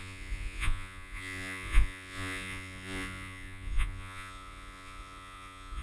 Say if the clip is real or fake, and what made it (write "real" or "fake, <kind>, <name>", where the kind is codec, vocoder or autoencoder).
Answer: fake, vocoder, Vocos